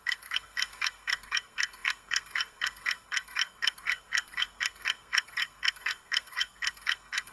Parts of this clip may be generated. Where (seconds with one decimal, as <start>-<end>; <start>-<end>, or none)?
0.0-7.3